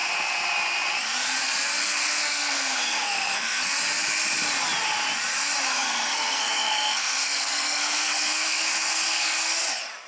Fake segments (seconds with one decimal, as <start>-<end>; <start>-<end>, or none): 1.8-3.8; 5.7-9.6